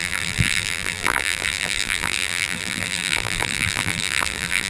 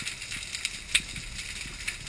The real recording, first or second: second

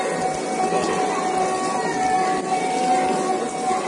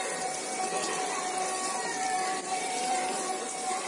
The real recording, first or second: first